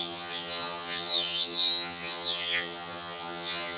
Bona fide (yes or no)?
no